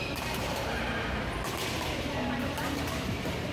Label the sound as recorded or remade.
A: remade